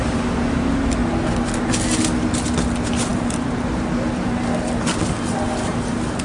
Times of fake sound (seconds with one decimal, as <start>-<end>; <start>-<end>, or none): none